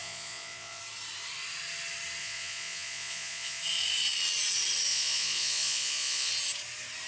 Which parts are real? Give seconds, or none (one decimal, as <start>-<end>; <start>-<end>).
0.8-2.2; 3.6-4.9; 6.3-7.1